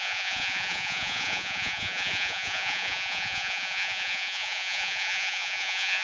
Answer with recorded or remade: remade